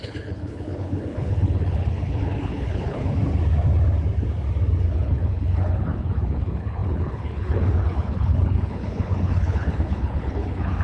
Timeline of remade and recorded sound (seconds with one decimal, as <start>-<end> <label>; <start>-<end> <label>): 0.0-3.2 remade; 3.2-4.9 recorded; 4.9-10.8 remade